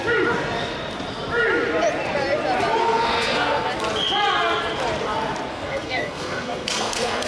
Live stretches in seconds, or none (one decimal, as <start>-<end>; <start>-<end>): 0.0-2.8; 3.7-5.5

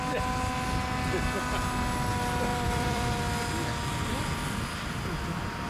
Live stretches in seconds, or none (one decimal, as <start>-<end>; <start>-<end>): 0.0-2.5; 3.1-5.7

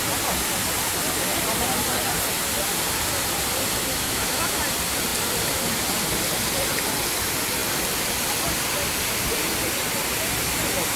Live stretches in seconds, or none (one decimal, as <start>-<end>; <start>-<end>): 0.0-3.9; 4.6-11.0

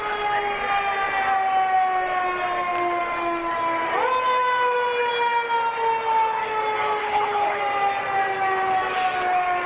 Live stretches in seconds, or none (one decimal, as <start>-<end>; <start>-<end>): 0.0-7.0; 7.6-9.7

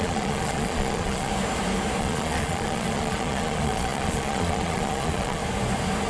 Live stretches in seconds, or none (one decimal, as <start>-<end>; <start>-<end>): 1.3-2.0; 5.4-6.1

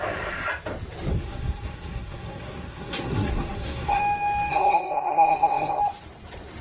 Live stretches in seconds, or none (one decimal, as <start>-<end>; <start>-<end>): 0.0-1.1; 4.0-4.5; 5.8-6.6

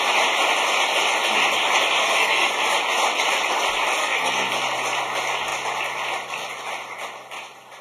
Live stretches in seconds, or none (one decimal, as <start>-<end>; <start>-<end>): 0.0-2.0; 2.5-4.0; 4.5-7.8

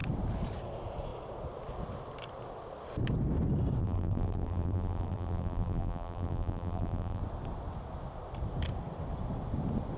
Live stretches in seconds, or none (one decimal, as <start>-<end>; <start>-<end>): 0.0-3.8; 7.2-10.0